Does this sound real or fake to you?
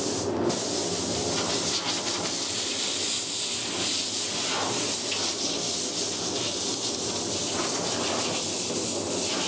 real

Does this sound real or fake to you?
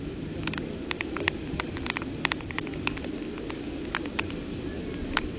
real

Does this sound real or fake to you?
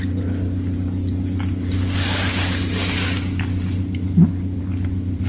fake